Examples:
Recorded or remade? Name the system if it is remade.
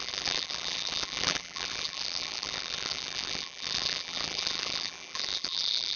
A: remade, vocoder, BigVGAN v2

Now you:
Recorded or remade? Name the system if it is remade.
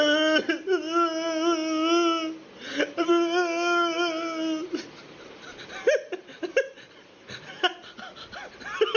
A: recorded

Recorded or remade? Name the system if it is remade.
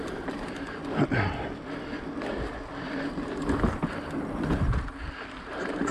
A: recorded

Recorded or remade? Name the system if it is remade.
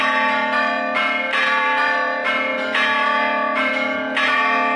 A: remade, vocoder, BigVGAN v2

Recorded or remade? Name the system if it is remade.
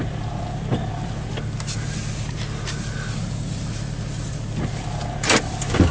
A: recorded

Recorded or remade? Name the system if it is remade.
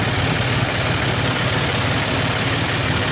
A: recorded